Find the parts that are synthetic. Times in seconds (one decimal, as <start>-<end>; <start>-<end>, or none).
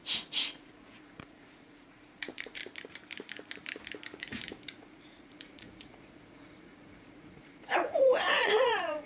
0.0-2.6; 4.2-9.1